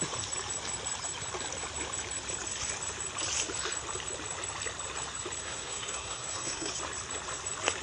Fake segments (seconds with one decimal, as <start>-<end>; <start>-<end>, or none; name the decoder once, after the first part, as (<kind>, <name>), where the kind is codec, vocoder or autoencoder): 5.4-6.7 (codec, SNAC)